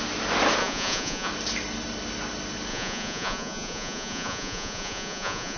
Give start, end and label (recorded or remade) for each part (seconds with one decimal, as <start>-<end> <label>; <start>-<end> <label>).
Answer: 0.0-0.6 recorded; 0.6-1.3 remade; 1.3-2.7 recorded; 2.7-5.6 remade